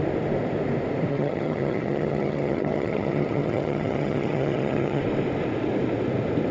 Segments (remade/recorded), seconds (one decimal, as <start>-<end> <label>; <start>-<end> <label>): 0.0-1.1 recorded; 1.1-5.0 remade; 5.0-6.5 recorded

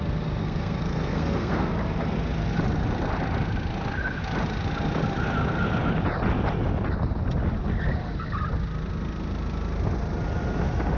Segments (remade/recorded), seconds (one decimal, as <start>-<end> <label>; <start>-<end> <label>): 0.0-0.4 recorded; 0.4-1.7 remade; 1.7-11.0 recorded

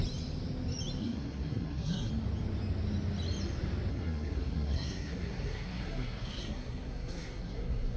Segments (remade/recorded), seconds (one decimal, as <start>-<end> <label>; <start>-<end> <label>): 0.0-1.0 recorded; 1.0-2.1 remade; 2.1-3.9 recorded; 3.9-8.0 remade

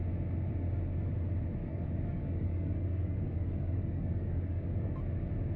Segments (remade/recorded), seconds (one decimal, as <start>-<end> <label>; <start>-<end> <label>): 0.0-1.6 recorded; 1.6-5.0 remade; 5.0-5.6 recorded

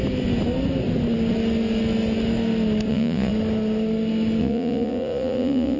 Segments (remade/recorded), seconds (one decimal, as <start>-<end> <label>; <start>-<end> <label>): 0.0-2.9 recorded; 2.9-3.3 remade; 3.3-4.4 recorded; 4.4-5.8 remade

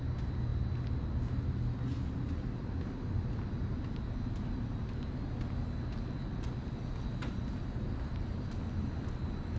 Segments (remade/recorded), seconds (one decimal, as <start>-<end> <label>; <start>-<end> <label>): 0.0-9.6 recorded

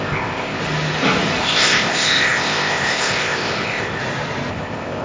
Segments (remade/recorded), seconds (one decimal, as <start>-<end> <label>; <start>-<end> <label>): 0.0-0.6 remade; 0.6-1.4 recorded; 1.4-4.0 remade; 4.0-4.5 recorded; 4.5-5.0 remade

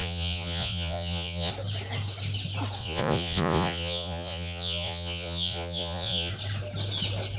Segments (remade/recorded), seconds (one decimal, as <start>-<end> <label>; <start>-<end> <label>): 0.0-1.5 remade; 1.5-2.8 recorded; 2.8-6.3 remade; 6.3-7.4 recorded